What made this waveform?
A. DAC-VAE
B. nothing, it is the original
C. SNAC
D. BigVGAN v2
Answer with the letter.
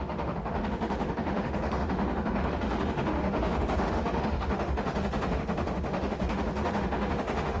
A